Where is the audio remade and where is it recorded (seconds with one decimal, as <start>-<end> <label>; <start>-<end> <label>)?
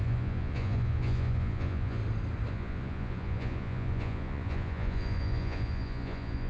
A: 0.0-2.0 remade; 2.0-2.5 recorded; 2.5-6.5 remade